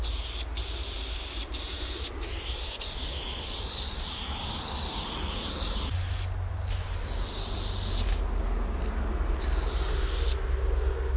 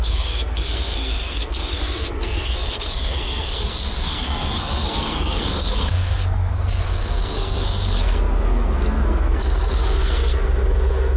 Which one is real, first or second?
first